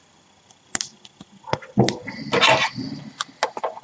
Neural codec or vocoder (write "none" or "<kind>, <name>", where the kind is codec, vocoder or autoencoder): none